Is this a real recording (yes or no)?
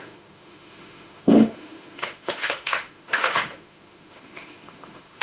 no